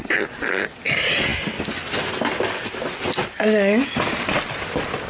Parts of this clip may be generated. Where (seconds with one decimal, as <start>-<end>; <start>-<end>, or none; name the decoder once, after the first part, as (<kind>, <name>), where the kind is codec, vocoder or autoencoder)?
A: none